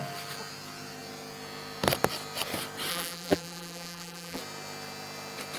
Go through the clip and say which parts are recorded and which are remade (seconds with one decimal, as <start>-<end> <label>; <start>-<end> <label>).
0.0-2.9 recorded; 2.9-4.4 remade; 4.4-5.6 recorded